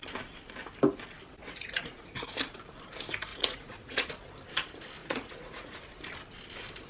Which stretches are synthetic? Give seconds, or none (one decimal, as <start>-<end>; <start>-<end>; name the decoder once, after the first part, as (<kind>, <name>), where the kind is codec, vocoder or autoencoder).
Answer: 1.4-2.3 (vocoder, Vocos); 3.3-4.1; 5.0-5.8